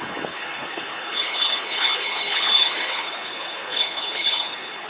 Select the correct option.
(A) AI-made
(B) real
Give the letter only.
A